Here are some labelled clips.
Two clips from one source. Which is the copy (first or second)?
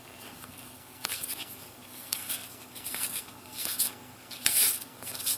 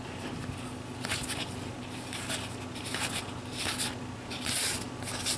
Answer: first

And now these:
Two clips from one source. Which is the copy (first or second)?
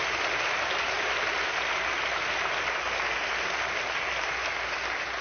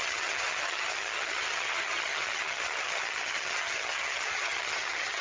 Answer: second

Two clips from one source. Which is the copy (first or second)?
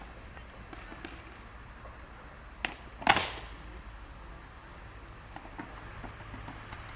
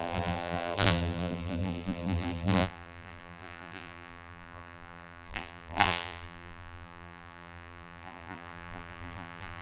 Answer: second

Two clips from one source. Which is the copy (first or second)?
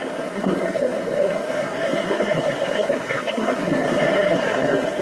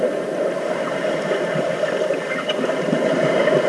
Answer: first